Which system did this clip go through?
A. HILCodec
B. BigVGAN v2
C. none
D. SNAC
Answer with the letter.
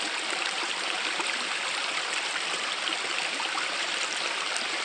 B